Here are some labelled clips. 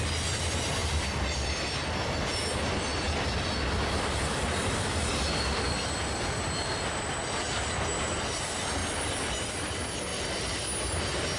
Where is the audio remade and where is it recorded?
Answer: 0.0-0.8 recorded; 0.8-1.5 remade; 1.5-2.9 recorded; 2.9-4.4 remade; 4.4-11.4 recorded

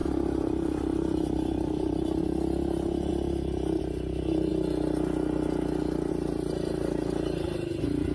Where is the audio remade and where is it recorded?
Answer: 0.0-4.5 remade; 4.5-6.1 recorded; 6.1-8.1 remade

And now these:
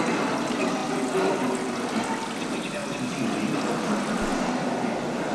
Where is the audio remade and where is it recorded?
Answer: 0.0-5.3 recorded